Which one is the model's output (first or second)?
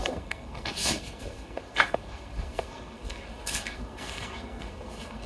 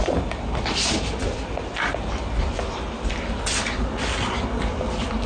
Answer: first